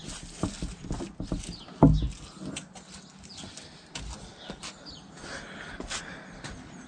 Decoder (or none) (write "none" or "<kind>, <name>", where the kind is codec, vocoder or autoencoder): none